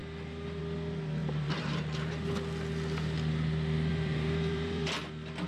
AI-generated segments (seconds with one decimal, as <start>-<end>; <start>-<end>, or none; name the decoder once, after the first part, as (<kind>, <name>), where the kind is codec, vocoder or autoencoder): 1.2-2.3 (vocoder, BigVGAN v2); 3.9-5.1